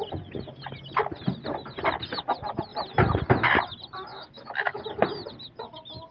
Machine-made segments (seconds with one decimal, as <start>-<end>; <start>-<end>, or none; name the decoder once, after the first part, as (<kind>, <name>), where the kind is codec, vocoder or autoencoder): 4.1-4.8 (autoencoder, DAC-VAE)